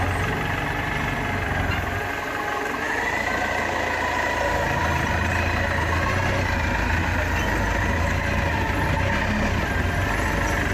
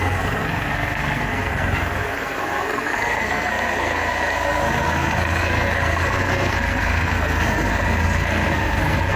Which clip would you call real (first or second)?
first